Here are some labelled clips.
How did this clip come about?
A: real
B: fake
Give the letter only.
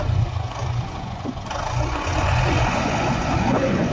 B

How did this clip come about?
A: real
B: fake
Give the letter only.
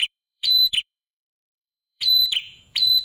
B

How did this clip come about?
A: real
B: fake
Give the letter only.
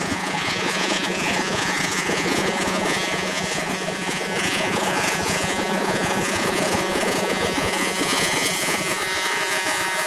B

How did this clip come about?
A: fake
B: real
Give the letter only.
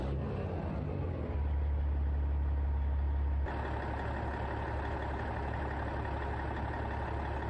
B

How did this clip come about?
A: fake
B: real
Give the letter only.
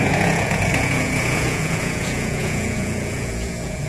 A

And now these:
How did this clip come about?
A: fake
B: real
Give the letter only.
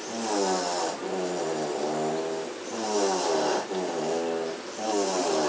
B